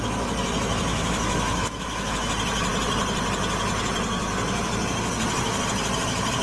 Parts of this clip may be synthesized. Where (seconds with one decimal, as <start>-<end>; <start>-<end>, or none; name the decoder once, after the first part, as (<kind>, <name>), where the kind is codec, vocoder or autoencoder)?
0.9-2.3 (autoencoder, DAC-VAE)

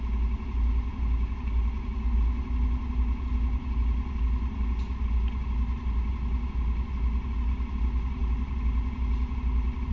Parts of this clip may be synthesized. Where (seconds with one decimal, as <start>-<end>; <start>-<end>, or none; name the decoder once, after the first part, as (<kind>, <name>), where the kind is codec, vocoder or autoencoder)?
none

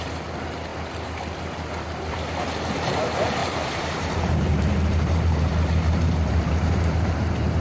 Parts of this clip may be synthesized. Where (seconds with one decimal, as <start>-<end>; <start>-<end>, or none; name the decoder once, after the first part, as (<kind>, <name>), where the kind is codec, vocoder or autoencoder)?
3.4-7.6 (vocoder, BigVGAN v2)